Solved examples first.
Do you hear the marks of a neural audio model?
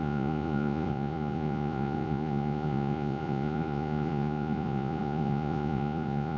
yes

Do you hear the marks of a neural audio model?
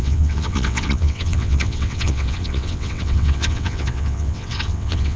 yes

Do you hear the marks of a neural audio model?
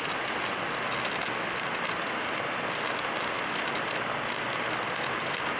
no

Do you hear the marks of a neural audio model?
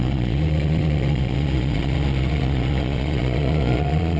yes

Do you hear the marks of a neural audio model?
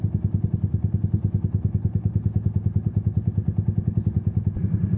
no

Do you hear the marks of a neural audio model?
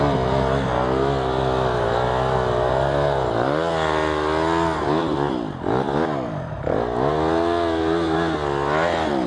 no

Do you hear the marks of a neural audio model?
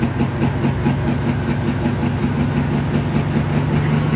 no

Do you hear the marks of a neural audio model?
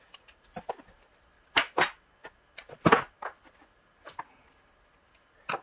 no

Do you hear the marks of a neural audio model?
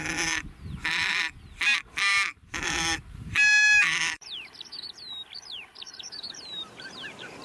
yes